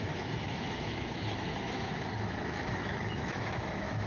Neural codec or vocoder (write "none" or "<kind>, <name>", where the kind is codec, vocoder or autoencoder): autoencoder, DAC-VAE